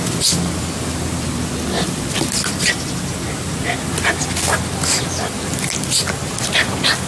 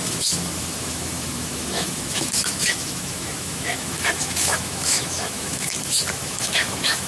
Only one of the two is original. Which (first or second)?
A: first